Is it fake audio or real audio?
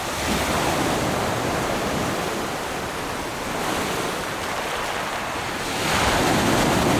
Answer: real